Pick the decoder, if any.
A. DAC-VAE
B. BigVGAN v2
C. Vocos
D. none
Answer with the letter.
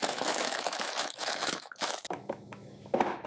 A